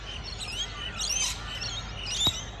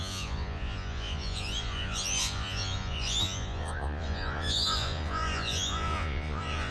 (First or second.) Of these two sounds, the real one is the first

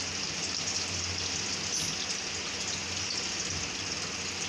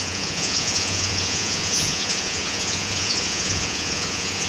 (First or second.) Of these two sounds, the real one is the first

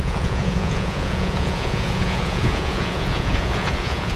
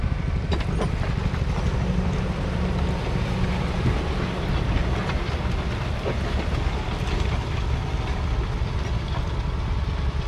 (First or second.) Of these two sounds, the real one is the second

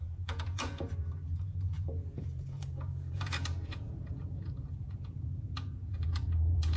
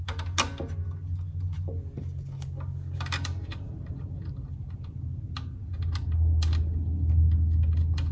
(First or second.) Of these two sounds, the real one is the second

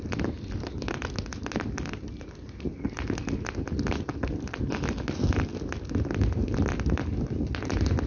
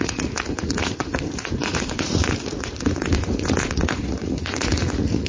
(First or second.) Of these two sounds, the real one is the first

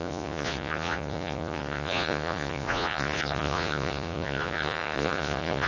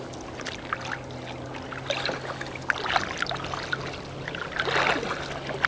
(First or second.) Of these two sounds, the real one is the second